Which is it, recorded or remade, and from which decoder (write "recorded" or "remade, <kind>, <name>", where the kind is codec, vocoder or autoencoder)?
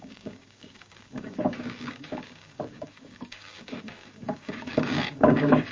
remade, codec, DAC